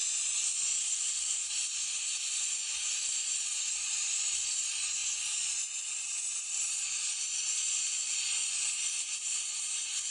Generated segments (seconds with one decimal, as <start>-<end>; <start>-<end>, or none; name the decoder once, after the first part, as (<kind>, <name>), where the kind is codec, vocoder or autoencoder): 0.8-1.5 (codec, SNAC)